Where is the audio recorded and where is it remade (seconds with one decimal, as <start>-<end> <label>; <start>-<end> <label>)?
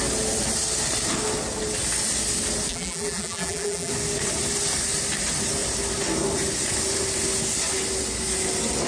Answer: 0.0-2.7 recorded; 2.7-3.9 remade; 3.9-8.9 recorded